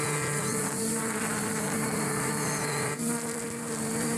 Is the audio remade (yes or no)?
yes